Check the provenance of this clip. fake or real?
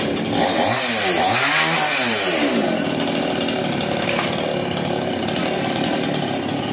real